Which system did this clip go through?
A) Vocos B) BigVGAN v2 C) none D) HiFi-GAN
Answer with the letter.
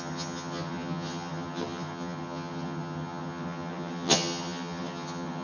D